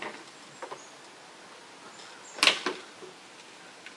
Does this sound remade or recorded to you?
recorded